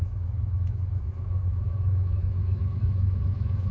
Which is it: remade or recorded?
remade